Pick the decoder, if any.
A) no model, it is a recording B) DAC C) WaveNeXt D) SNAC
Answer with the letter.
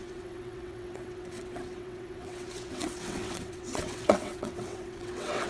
C